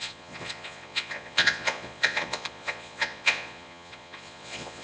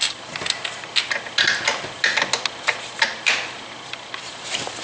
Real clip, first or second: second